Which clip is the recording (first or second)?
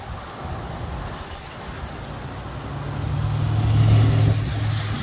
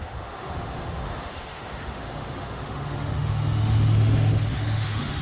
first